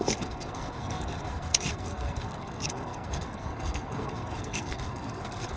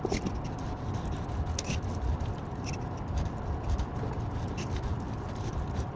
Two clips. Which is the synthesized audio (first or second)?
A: first